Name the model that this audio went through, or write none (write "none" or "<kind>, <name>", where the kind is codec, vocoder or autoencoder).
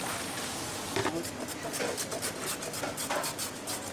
none